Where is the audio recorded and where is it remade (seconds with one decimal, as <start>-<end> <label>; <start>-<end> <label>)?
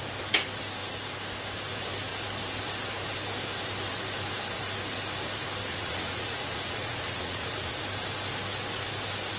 0.0-5.7 recorded; 5.7-7.7 remade; 7.7-9.4 recorded